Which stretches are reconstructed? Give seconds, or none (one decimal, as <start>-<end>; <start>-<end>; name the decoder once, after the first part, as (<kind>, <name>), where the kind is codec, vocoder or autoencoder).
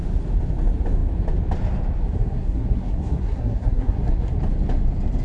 2.0-4.4 (codec, SNAC)